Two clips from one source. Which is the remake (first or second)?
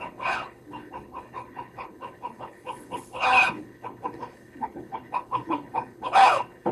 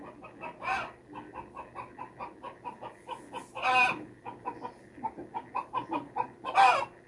first